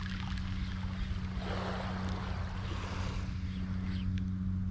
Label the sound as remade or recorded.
recorded